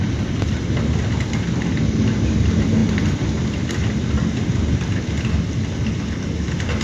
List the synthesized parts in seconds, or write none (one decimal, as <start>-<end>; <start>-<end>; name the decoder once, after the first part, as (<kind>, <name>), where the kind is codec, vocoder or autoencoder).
none